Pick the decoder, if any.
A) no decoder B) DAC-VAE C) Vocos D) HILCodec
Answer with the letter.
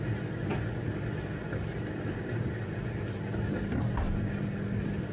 A